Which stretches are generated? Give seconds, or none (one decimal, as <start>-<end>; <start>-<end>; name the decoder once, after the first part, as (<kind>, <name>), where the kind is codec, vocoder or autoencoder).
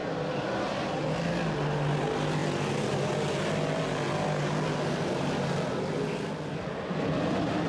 none